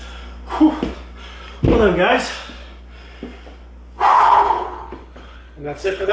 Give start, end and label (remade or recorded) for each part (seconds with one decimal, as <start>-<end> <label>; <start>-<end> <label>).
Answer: 0.0-4.1 recorded; 4.1-6.1 remade